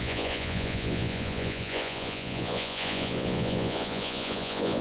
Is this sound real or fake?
fake